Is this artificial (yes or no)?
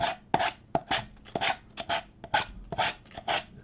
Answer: no